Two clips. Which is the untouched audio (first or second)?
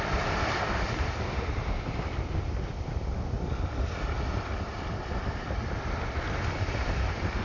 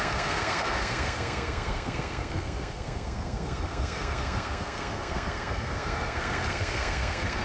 first